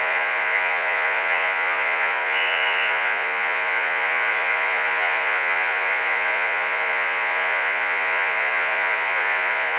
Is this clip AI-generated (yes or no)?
yes